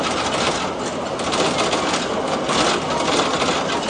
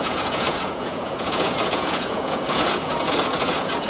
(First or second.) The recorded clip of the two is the first